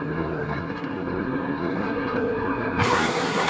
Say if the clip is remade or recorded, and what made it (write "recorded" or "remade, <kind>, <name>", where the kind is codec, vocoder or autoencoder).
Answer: remade, codec, SNAC